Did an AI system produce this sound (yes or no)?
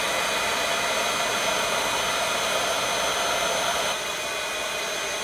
no